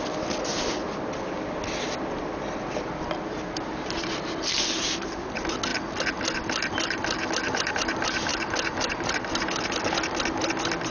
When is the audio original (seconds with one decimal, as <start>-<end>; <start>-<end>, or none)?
0.0-10.9